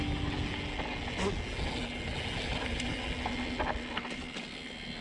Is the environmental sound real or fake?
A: real